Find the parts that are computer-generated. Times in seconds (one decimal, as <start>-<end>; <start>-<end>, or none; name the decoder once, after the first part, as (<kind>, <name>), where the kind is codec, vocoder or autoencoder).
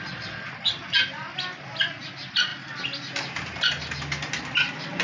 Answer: none